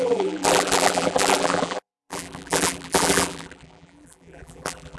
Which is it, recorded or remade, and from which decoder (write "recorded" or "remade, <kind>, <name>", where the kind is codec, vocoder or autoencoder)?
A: remade, vocoder, BigVGAN v2